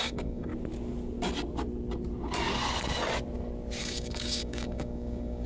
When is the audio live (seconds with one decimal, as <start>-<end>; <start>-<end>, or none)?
0.5-3.8